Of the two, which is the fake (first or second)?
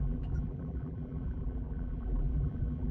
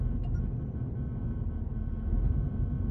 first